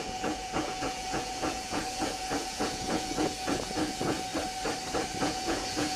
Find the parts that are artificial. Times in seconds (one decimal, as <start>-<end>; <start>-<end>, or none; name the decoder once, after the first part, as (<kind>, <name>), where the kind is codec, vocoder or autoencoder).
0.0-4.3 (vocoder, Vocos); 5.2-6.0